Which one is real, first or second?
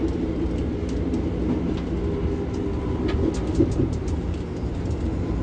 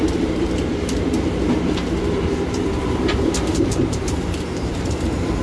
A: first